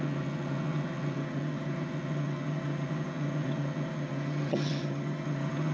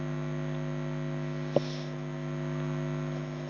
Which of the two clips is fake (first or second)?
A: first